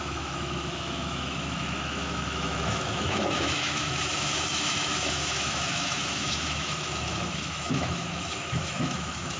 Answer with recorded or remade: remade